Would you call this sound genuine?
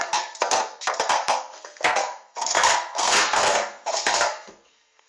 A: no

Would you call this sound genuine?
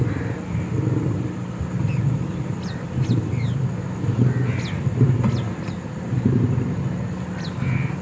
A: yes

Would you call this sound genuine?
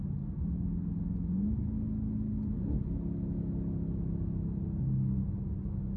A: yes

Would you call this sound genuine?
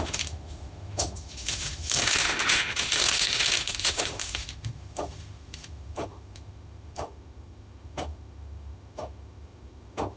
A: no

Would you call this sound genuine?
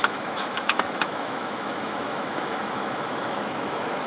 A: no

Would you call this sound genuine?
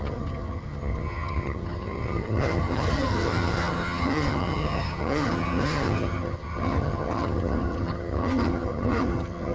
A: no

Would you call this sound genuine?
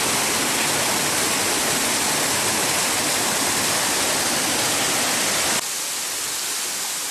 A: yes